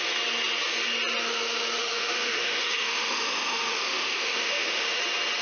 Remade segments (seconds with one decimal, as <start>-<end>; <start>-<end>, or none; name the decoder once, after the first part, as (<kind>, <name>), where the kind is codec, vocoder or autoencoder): 1.8-5.0 (autoencoder, DAC-VAE)